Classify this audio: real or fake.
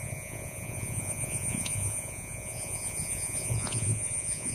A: fake